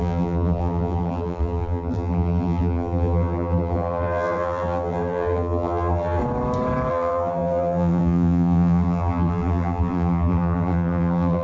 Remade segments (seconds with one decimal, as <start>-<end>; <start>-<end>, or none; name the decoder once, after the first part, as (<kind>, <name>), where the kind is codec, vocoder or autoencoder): 0.0-6.2 (vocoder, BigVGAN v2); 6.9-11.4